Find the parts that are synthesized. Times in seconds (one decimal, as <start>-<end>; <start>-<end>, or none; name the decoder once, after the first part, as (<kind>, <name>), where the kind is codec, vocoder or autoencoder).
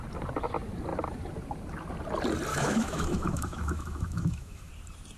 2.5-4.7 (autoencoder, DAC-VAE)